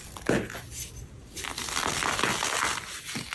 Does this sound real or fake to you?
real